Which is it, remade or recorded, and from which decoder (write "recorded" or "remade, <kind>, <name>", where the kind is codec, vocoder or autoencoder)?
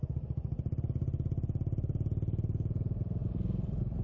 recorded